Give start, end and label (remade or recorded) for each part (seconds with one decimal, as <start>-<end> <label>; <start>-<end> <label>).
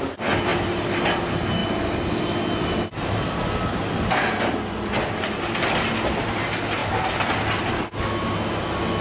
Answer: 0.0-9.0 recorded